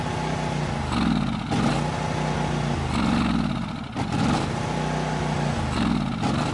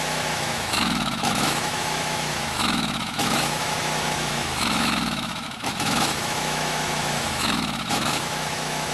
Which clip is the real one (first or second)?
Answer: first